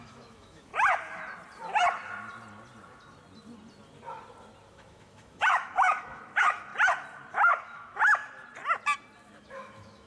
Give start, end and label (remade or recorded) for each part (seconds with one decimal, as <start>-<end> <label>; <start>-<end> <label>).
0.0-0.7 remade; 0.7-4.7 recorded; 4.7-6.7 remade; 6.7-7.3 recorded; 7.3-8.2 remade; 8.2-9.4 recorded; 9.4-10.1 remade

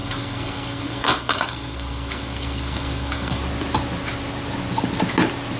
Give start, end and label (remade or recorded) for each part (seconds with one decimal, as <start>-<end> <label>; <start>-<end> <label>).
0.0-3.4 remade; 3.4-5.6 recorded

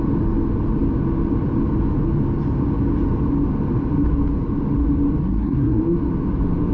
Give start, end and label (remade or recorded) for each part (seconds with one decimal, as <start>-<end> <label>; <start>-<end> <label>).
0.0-5.2 recorded; 5.2-5.8 remade; 5.8-6.7 recorded